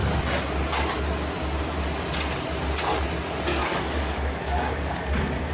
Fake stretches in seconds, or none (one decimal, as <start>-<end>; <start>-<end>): 3.6-5.5